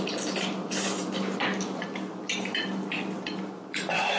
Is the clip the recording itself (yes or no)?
yes